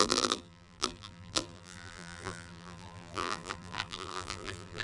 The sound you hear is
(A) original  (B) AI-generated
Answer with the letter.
B